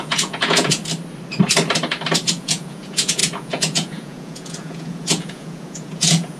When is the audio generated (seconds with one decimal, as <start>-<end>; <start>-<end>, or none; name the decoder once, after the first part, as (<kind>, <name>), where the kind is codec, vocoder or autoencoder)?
0.0-0.8 (vocoder, Vocos); 2.3-6.4